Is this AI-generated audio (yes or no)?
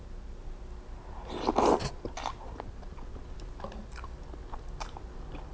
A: no